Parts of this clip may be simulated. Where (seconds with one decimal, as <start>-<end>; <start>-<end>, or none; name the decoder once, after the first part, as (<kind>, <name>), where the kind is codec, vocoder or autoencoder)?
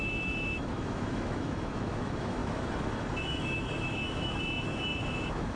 0.0-5.6 (autoencoder, DAC-VAE)